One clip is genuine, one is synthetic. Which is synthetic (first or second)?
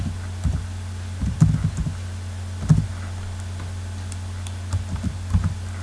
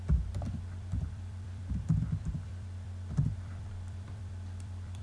second